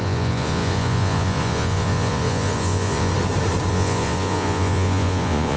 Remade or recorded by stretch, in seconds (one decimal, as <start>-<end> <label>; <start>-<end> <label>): 0.0-3.1 remade; 3.1-3.7 recorded; 3.7-5.6 remade

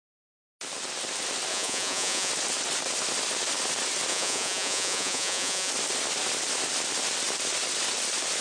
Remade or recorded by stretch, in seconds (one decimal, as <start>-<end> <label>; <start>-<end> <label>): 0.0-1.5 recorded; 1.5-2.3 remade; 2.3-4.1 recorded; 4.1-5.7 remade; 5.7-8.4 recorded

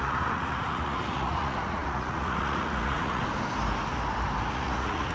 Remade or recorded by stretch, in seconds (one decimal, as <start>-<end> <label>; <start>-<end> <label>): 0.0-3.2 remade; 3.2-4.5 recorded; 4.5-5.1 remade